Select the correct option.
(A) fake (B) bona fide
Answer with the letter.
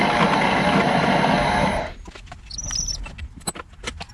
B